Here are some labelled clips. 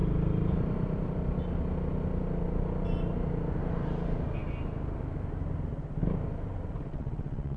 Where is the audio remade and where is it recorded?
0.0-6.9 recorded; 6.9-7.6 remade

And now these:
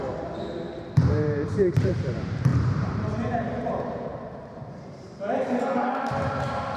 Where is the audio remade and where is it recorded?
0.0-6.8 remade

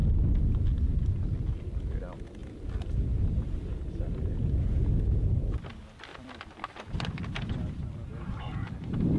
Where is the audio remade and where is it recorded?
0.0-2.4 recorded; 2.4-4.0 remade; 4.0-6.1 recorded; 6.1-8.4 remade; 8.4-9.2 recorded

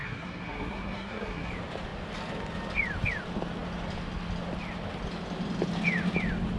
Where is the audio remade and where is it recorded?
0.0-1.5 remade; 1.5-6.6 recorded

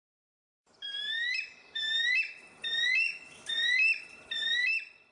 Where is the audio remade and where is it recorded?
0.0-0.9 remade; 0.9-3.3 recorded; 3.3-5.1 remade